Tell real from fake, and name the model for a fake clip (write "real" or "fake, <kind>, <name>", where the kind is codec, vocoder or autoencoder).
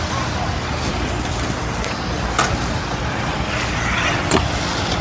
real